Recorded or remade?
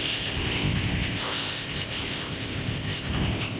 remade